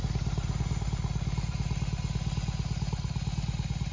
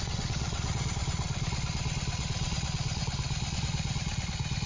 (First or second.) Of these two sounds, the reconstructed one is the second